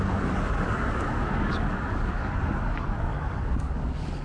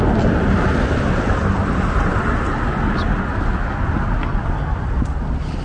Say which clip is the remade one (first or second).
first